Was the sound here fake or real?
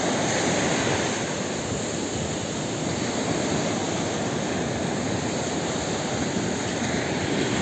real